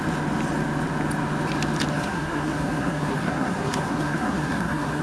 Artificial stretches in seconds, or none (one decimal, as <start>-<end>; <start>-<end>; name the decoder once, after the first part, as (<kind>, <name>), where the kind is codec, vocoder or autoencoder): 1.9-5.0 (codec, SNAC)